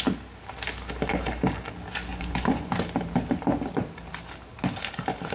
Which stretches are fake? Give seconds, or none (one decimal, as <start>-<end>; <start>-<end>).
2.1-2.7